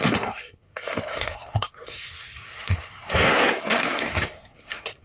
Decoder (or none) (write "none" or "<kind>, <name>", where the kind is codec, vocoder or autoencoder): codec, SNAC